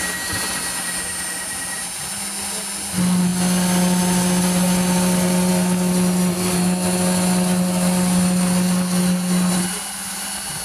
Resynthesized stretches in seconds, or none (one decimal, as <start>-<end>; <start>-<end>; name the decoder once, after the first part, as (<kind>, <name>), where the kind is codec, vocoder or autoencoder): none